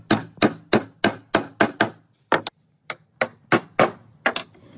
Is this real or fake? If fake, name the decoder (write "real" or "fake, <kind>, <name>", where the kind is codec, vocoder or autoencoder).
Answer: real